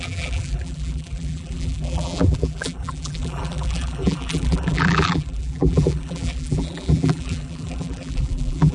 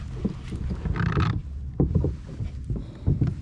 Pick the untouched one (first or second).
second